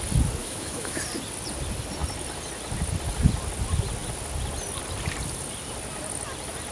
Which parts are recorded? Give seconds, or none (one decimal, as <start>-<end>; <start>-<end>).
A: 0.0-0.4; 1.0-6.7